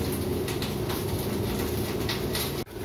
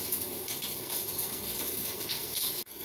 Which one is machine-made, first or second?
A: second